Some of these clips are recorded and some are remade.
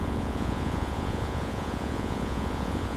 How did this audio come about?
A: remade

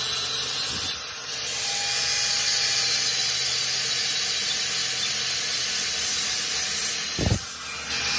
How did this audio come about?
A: recorded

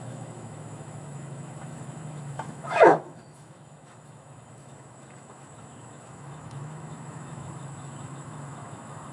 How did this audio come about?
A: remade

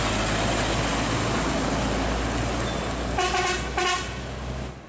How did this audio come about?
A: recorded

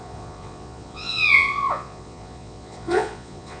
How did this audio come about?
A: remade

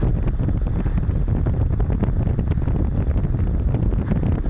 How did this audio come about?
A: recorded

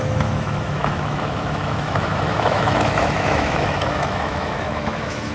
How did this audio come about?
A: remade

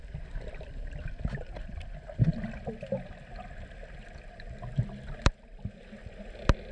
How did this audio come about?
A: recorded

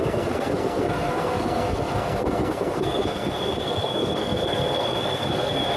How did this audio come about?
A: remade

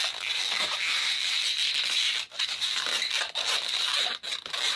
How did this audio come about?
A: recorded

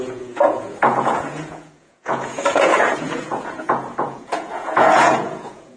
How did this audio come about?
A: remade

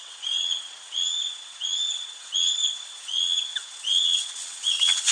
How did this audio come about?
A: remade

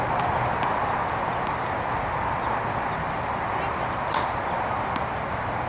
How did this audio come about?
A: recorded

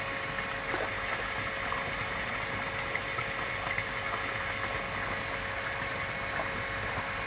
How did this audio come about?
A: recorded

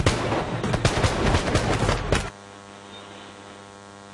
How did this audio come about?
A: recorded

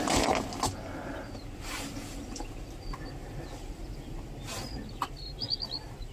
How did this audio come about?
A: recorded